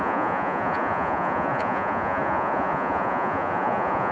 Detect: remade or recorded remade